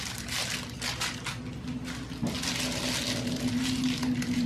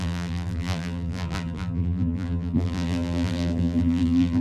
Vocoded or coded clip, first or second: second